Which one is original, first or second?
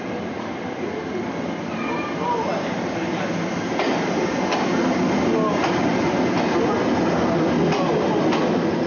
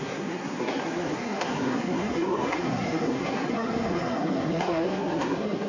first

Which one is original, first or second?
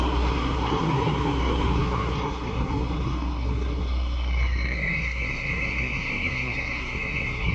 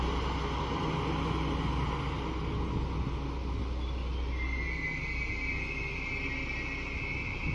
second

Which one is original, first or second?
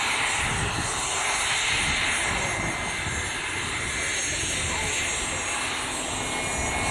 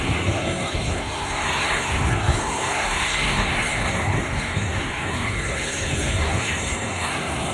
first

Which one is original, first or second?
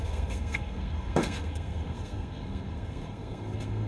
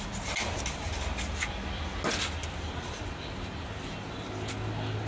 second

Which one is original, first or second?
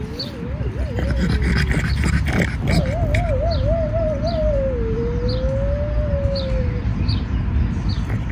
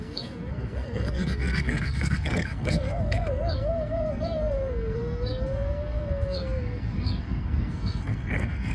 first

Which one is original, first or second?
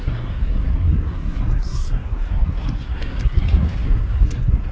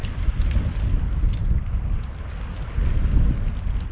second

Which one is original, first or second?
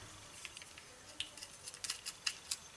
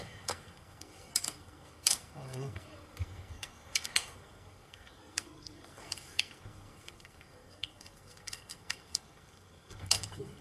first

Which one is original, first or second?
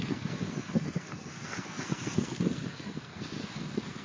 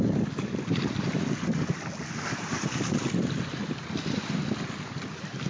second